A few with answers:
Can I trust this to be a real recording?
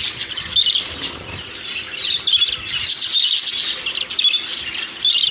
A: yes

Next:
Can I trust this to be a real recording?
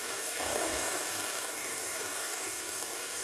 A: no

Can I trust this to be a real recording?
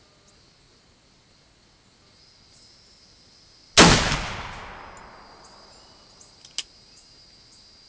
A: yes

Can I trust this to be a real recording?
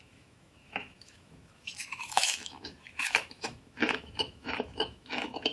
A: no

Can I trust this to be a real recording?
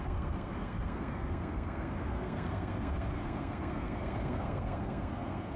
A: no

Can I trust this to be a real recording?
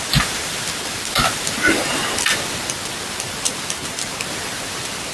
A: no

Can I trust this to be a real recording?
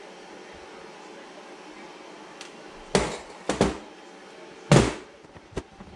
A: yes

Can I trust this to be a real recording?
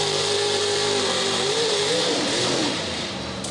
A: no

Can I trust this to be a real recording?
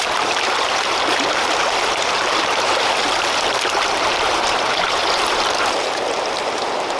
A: no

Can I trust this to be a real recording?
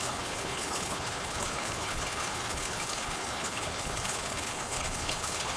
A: no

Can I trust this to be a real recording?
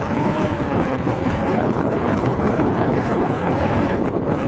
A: no